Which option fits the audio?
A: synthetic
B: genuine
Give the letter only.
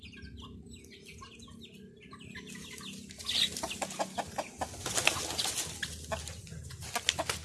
B